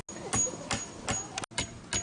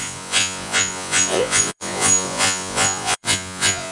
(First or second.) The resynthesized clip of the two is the second